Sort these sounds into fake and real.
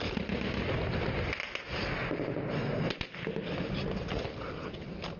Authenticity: real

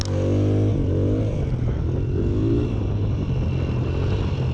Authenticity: real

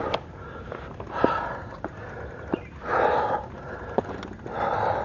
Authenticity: real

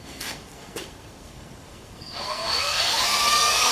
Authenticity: fake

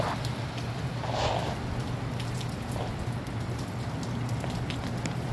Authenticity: real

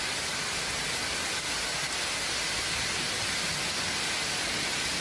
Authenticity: real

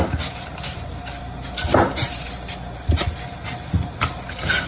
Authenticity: real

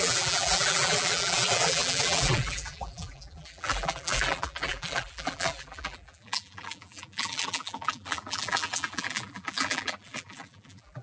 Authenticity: fake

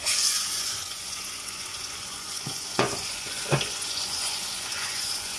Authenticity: fake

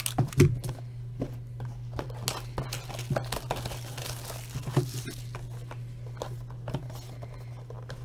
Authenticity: real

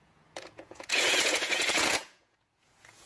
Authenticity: fake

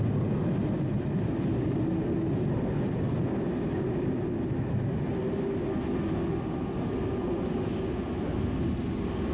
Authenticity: real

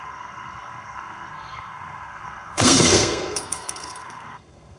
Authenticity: fake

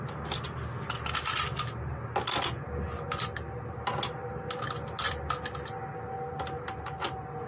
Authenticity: real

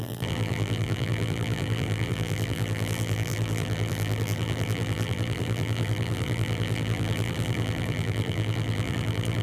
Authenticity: fake